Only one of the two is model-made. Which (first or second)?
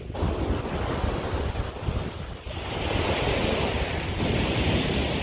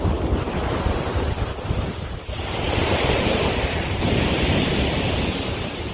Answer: second